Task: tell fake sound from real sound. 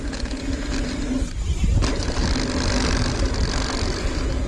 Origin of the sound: real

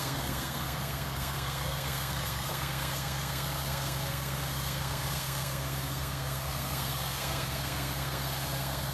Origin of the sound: fake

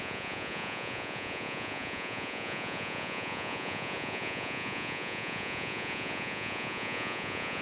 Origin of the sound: fake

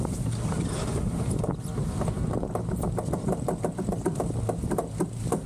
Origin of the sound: real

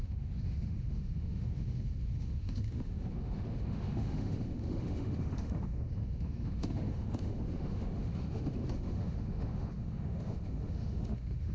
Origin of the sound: fake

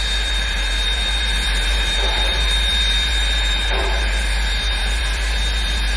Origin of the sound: fake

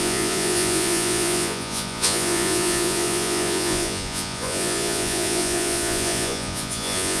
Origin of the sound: fake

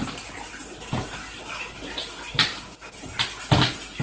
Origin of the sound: real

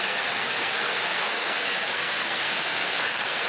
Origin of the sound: fake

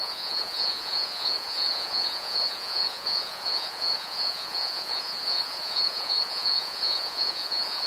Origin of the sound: fake